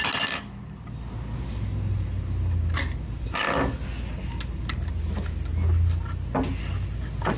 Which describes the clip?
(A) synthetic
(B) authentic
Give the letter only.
B